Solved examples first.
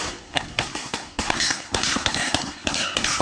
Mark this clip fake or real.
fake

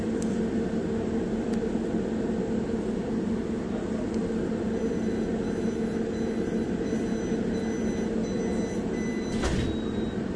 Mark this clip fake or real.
real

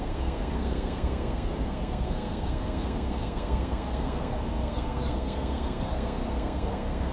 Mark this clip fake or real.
fake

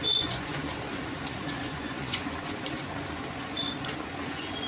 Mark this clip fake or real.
fake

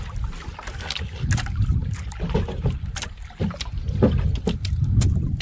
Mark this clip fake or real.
real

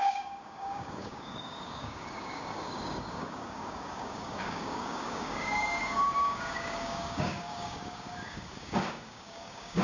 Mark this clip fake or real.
fake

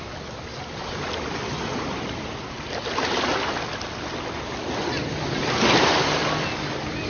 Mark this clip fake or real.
real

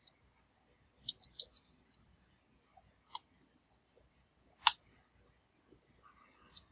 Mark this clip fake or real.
real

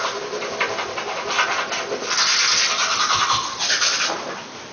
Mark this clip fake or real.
real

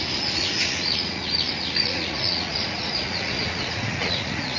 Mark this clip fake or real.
fake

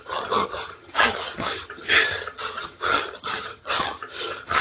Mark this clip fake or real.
fake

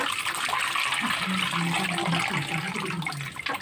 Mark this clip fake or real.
real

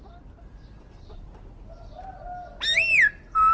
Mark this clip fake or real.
real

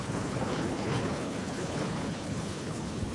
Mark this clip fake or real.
fake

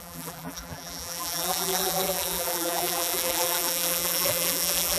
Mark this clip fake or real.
fake